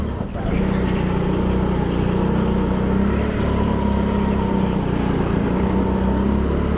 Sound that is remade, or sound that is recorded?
recorded